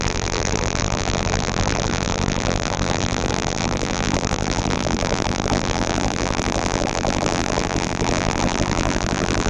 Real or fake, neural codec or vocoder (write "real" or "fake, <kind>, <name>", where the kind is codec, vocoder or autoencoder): fake, vocoder, BigVGAN v2